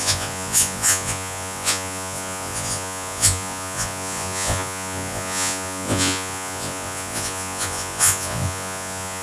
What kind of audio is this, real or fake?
fake